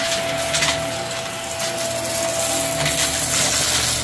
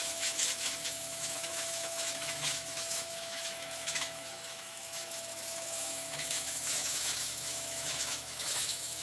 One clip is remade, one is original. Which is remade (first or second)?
second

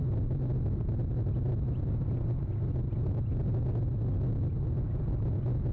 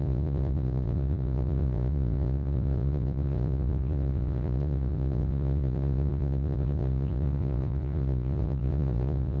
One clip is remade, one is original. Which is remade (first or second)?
second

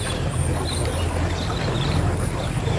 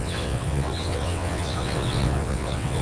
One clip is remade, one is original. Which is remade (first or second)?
second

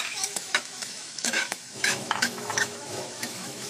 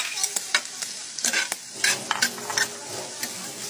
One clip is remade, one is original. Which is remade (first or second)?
first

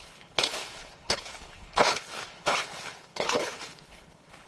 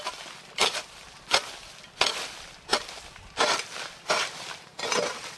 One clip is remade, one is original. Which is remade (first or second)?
first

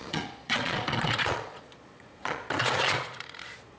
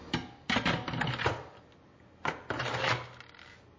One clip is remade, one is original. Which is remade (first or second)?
first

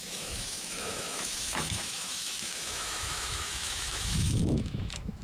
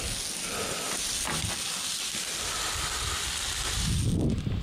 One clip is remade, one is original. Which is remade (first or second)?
first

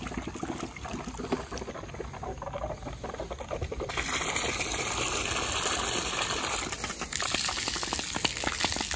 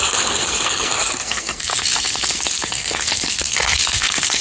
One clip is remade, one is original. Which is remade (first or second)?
second